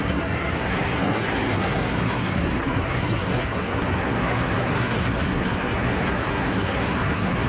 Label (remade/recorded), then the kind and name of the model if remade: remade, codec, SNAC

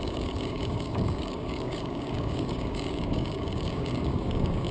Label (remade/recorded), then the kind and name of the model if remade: remade, codec, DAC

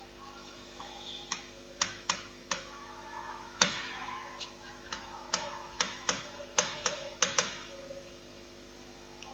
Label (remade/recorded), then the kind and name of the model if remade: remade, autoencoder, DAC-VAE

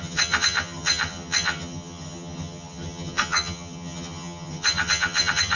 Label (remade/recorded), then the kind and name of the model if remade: remade, vocoder, HiFi-GAN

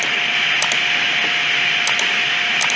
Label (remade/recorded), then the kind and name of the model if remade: recorded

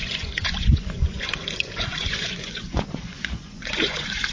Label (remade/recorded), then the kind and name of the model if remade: remade, vocoder, Vocos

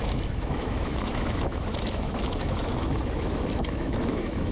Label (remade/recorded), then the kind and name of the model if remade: remade, autoencoder, DAC-VAE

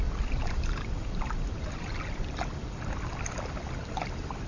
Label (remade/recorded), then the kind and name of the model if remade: recorded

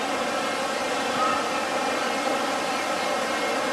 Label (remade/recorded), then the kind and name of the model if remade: recorded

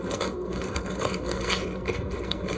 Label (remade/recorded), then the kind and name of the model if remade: remade, codec, SNAC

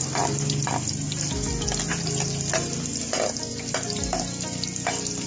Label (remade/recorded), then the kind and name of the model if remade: recorded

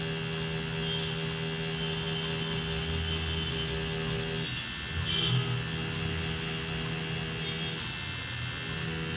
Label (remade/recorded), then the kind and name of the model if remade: recorded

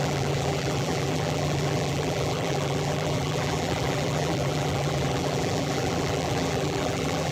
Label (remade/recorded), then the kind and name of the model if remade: remade, vocoder, BigVGAN v2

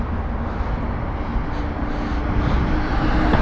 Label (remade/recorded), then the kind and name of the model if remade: recorded